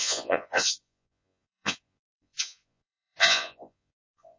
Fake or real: fake